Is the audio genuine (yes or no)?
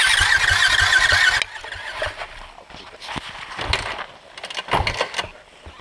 yes